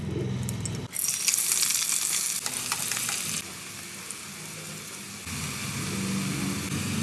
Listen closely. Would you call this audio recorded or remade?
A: recorded